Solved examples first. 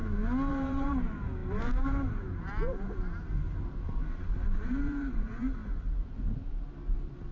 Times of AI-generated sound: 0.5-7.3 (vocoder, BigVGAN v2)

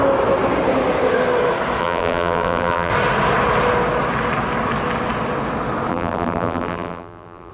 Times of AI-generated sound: 1.8-2.9 (vocoder, BigVGAN v2); 5.9-7.5